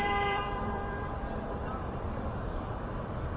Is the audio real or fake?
fake